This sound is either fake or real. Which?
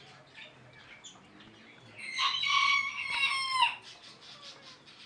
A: real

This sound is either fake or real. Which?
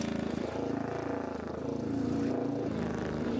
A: real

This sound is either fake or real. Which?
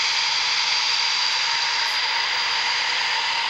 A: fake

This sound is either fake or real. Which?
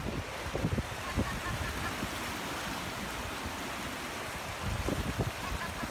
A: real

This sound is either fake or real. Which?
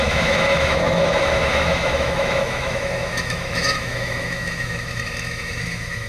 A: fake